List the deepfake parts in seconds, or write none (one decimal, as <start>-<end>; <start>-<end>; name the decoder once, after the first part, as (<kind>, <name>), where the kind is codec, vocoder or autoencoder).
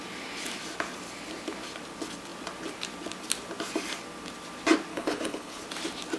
4.9-5.6 (codec, HILCodec)